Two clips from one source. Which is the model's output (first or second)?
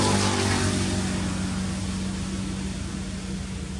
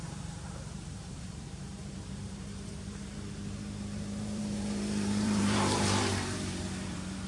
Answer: second